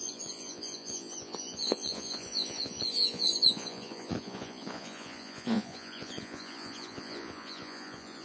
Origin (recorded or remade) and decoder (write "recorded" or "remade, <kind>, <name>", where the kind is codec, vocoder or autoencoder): remade, vocoder, Vocos